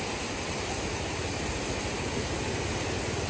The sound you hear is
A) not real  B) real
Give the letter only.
B